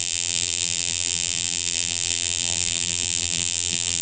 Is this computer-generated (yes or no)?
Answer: yes